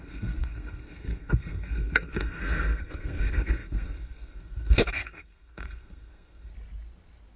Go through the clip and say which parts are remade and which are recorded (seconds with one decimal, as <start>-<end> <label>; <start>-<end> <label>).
0.0-6.5 remade; 6.5-7.4 recorded